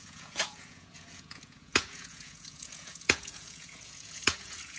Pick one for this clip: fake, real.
fake